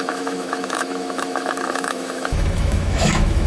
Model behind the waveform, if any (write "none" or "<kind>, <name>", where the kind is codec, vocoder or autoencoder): autoencoder, DAC-VAE